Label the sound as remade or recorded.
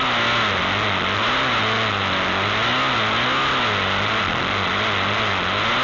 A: recorded